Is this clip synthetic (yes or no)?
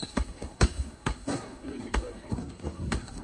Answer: yes